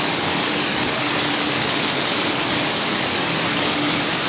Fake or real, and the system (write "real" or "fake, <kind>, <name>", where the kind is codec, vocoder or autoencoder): fake, codec, DAC